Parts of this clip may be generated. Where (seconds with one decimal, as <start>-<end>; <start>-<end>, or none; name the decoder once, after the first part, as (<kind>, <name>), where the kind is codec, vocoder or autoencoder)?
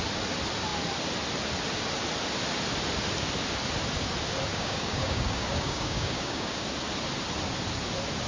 4.5-6.6 (codec, DAC)